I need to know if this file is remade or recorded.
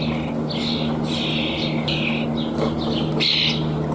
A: recorded